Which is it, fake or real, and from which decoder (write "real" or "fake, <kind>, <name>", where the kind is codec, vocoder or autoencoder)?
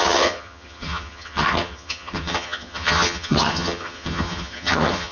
fake, vocoder, HiFi-GAN